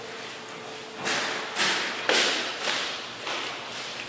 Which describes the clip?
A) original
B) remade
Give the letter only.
A